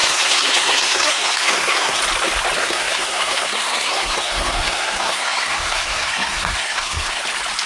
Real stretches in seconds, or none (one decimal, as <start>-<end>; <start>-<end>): 2.0-2.6; 7.2-7.7